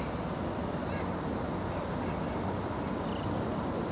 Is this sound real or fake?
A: real